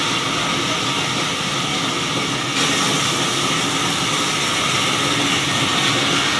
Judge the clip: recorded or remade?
recorded